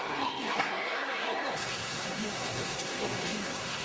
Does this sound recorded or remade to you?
remade